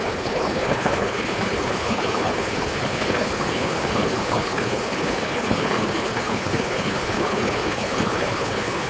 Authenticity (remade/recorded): remade